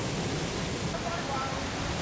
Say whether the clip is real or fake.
fake